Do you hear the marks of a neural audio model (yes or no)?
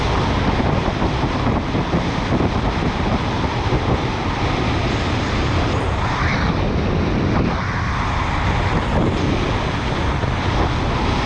no